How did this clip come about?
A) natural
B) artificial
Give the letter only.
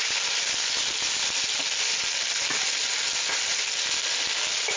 A